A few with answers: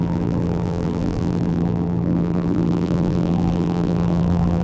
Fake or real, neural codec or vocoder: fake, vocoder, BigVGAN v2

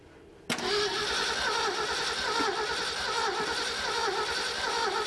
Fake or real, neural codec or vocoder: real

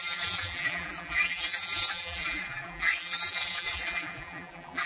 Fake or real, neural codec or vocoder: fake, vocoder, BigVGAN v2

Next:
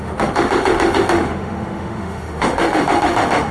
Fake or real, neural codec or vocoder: fake, autoencoder, DAC-VAE